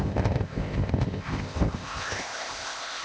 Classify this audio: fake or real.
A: fake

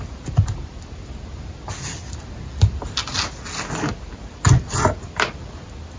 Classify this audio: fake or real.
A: real